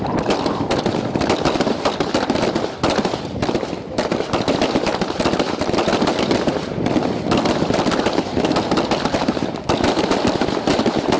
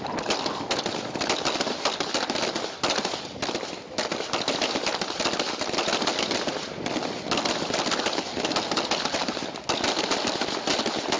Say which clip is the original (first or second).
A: second